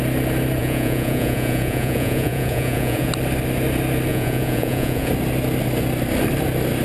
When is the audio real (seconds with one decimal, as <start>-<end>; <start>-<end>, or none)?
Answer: 0.0-0.6; 3.1-4.1; 5.1-6.8